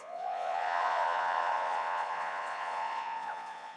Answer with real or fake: fake